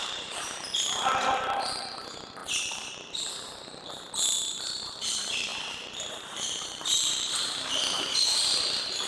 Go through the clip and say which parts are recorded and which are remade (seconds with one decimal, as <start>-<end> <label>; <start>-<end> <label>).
0.0-9.1 remade